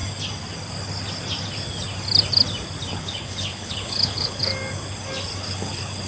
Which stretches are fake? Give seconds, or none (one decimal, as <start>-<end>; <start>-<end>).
2.9-4.5; 5.4-6.1